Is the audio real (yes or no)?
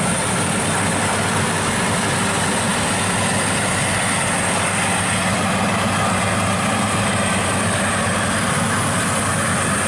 yes